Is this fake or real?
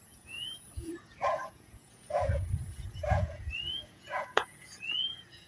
fake